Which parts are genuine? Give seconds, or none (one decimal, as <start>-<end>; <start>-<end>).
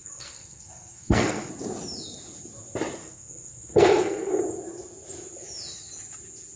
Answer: 1.5-3.0; 4.4-6.6